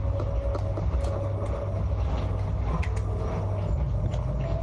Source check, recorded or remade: recorded